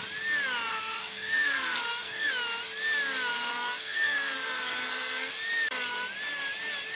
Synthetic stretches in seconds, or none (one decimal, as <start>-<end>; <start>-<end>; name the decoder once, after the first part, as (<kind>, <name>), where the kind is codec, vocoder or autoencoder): 0.7-2.3 (codec, SNAC); 3.3-5.3

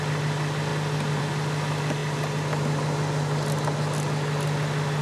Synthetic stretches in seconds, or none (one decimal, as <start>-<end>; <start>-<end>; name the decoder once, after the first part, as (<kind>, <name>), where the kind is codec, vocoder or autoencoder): none

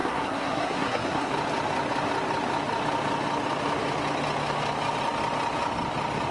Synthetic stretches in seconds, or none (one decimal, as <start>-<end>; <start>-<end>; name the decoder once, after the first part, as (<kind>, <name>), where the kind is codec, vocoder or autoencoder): 0.0-1.3 (codec, SNAC)

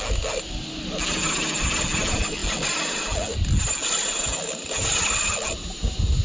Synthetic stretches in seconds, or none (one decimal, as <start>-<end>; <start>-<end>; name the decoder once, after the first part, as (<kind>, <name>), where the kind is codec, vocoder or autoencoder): none

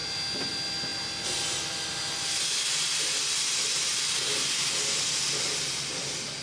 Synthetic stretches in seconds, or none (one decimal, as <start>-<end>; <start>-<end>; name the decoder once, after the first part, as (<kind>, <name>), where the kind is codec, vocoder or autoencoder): none

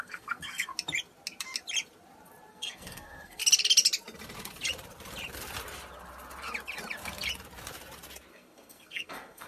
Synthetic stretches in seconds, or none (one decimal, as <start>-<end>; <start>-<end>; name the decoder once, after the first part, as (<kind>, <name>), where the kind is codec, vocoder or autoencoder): 0.0-0.7 (codec, SNAC); 2.5-3.4; 8.3-9.5

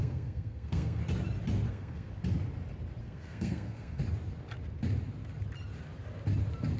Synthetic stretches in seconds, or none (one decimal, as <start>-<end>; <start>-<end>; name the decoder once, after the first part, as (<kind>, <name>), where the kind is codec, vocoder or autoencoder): 0.0-1.0 (codec, SNAC); 1.7-2.1; 3.0-4.0

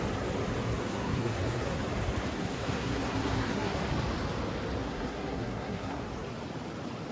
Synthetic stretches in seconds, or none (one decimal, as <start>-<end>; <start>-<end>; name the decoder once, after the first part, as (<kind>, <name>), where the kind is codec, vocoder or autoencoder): 0.8-1.8 (codec, SNAC); 2.4-3.8; 4.8-6.0